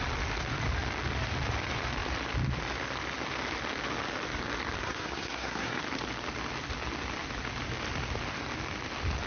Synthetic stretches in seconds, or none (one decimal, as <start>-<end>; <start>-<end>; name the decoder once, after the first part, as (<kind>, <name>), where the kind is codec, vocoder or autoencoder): 4.8-5.8 (codec, SNAC)